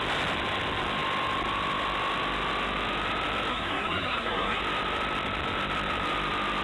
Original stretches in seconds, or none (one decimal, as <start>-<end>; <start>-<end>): 0.0-3.5; 4.6-6.6